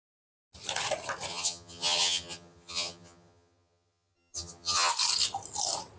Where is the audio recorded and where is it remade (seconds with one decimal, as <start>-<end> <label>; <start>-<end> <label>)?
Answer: 0.0-1.3 recorded; 1.3-4.9 remade; 4.9-6.0 recorded